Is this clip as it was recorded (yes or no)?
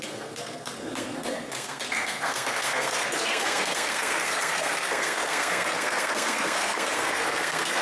no